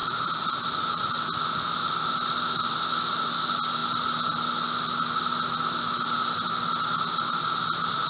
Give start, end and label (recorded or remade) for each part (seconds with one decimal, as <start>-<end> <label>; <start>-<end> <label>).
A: 0.0-8.1 recorded